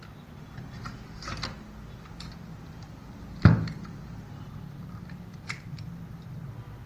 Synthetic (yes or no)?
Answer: no